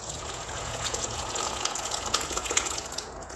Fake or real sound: fake